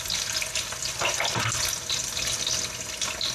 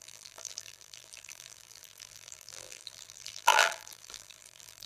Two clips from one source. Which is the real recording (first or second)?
first